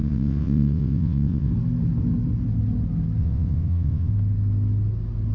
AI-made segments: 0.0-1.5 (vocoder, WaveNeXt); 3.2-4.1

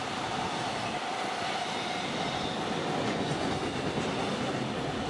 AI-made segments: 3.0-3.5 (vocoder, Vocos)

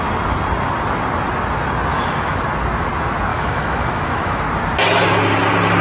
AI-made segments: 1.9-2.4 (autoencoder, DAC-VAE); 3.3-4.4

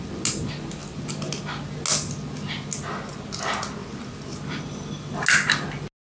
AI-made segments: none

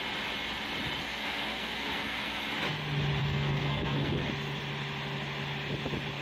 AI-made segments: 1.0-2.4 (codec, SNAC); 3.2-4.3

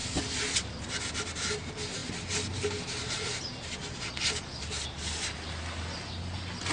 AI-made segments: none

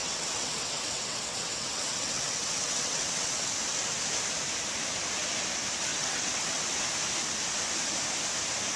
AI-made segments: 0.0-3.5 (vocoder, WaveNeXt); 5.9-6.6